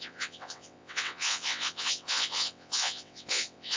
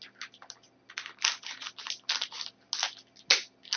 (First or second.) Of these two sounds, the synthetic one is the first